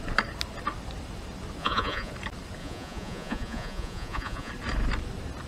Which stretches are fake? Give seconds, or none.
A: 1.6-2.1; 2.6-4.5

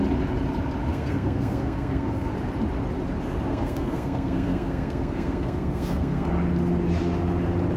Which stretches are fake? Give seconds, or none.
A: 0.9-2.3; 3.5-6.3

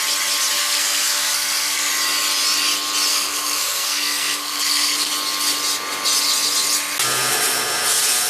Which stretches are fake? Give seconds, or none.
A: 0.6-1.9; 3.1-5.1

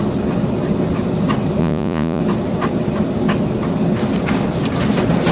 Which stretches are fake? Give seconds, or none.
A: 1.6-2.2

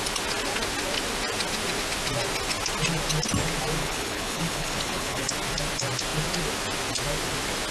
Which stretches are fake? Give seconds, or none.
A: 3.8-5.3

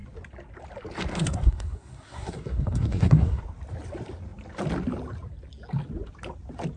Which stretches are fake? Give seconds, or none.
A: 1.1-3.4

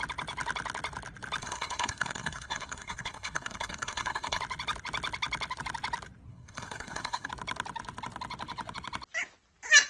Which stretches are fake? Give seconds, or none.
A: 1.4-4.4; 6.3-7.3

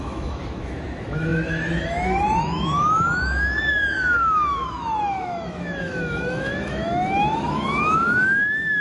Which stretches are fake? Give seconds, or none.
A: 0.0-8.8